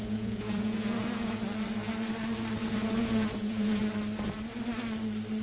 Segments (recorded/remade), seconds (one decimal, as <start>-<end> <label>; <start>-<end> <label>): 0.0-1.4 remade; 1.4-2.6 recorded; 2.6-3.8 remade; 3.8-5.4 recorded